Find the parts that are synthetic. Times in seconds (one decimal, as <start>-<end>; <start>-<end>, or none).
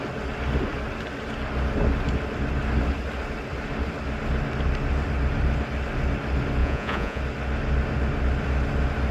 6.6-7.2